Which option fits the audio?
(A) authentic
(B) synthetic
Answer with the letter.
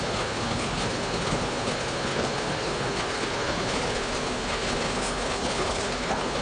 B